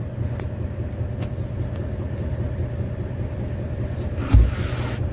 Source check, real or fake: real